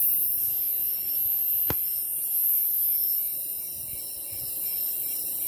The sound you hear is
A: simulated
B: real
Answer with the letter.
A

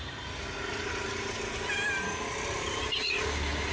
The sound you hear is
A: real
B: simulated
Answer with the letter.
A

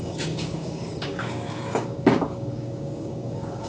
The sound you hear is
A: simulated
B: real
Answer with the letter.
A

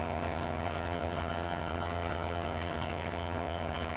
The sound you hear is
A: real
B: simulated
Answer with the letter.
B